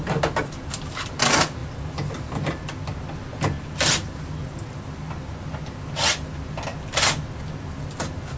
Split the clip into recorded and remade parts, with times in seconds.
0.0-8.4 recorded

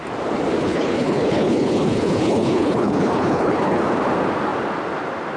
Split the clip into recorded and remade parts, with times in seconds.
0.0-0.6 recorded; 0.6-3.8 remade; 3.8-5.4 recorded

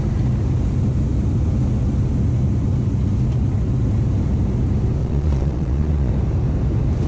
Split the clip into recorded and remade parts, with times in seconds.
0.0-5.0 recorded; 5.0-6.1 remade; 6.1-7.1 recorded

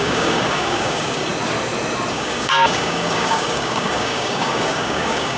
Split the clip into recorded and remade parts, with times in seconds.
0.0-1.3 remade; 1.3-2.1 recorded; 2.1-5.4 remade

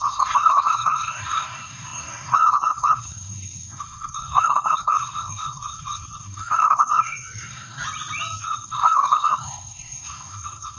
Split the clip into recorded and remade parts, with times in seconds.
0.0-7.8 remade; 7.8-8.4 recorded; 8.4-10.8 remade

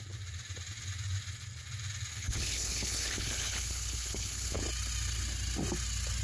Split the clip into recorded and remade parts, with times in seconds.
0.0-2.1 recorded; 2.1-4.6 remade; 4.6-6.2 recorded

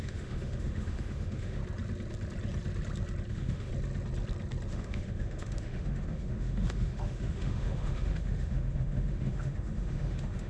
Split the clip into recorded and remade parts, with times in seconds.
0.0-1.6 remade; 1.6-3.3 recorded; 3.3-3.7 remade; 3.7-4.7 recorded; 4.7-10.5 remade